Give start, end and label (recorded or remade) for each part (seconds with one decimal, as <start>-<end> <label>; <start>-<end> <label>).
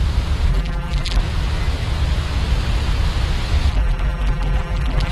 0.0-0.5 recorded; 0.5-1.2 remade; 1.2-3.7 recorded; 3.7-5.1 remade